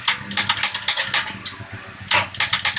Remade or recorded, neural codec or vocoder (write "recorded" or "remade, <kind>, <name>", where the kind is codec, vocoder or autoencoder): recorded